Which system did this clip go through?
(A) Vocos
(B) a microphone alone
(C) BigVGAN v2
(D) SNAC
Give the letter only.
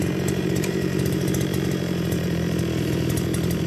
C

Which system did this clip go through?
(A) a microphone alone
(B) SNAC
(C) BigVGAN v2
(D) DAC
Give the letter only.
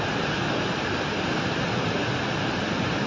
A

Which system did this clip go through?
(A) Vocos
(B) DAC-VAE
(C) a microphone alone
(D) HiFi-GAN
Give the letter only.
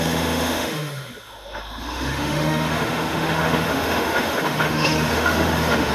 B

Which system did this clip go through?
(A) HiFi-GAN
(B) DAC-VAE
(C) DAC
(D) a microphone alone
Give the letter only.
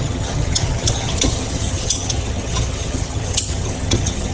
A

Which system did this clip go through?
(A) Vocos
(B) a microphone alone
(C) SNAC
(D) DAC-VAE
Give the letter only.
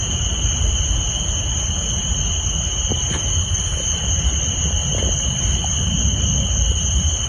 B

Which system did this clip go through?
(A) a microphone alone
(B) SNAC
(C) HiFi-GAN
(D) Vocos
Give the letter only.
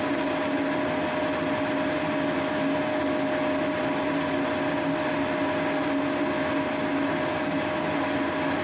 A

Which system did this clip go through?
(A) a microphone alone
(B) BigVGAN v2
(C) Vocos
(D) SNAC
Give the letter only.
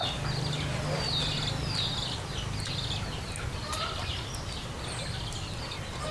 A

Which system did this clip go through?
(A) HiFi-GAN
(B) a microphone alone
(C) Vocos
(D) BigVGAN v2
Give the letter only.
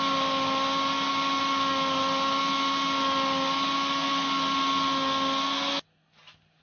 B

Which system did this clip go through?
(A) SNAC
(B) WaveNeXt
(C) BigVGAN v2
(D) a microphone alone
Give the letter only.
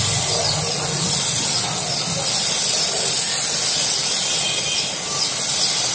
D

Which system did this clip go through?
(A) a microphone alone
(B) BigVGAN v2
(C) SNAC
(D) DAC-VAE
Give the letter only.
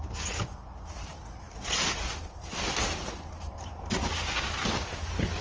A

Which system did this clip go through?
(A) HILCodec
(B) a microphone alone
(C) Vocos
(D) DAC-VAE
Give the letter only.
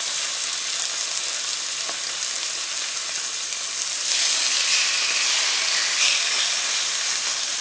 B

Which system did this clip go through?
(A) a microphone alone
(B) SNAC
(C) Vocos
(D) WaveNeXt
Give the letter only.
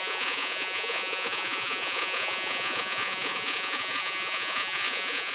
C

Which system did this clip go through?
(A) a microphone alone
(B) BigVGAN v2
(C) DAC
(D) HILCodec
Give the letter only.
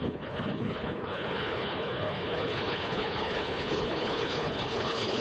D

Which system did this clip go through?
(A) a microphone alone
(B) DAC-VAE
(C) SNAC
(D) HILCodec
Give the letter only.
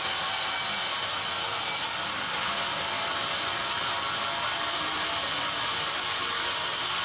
A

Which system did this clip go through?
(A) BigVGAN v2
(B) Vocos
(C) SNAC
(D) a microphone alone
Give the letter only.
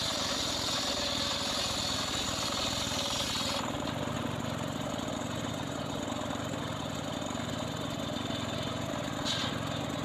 D